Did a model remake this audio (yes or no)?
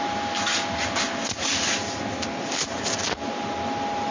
no